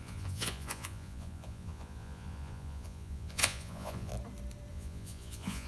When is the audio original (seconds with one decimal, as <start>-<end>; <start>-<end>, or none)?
4.1-4.7